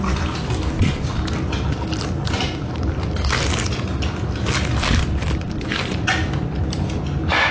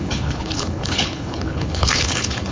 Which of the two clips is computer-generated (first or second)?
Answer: second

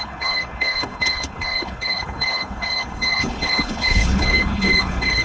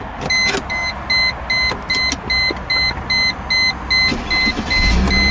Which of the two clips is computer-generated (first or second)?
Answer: first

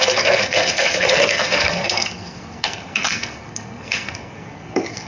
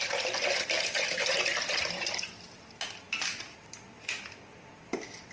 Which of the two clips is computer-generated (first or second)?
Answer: first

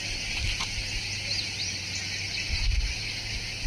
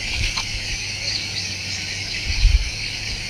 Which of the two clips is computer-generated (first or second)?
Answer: second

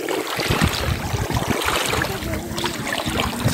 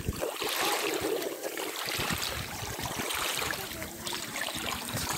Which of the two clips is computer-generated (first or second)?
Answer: second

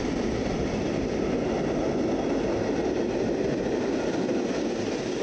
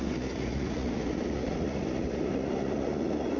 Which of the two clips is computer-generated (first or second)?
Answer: second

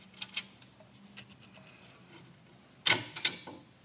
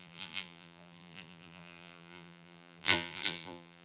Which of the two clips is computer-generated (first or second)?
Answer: second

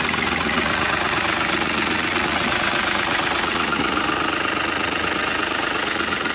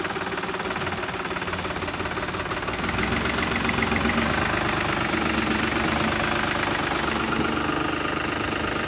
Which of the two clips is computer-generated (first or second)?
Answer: first